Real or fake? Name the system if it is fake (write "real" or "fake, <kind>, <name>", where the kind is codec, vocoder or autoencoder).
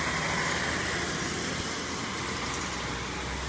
real